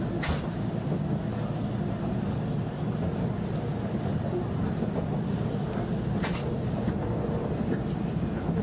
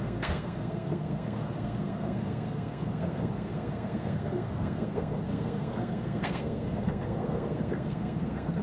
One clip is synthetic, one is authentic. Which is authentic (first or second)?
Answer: first